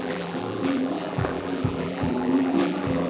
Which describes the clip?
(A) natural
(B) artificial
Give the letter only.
B